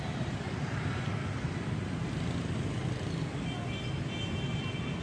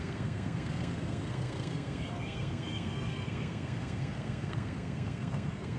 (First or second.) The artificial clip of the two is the second